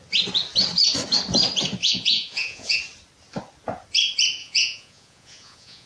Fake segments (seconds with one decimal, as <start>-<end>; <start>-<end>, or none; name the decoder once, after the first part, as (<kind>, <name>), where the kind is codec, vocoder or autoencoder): 1.8-2.8 (vocoder, Vocos); 4.4-5.9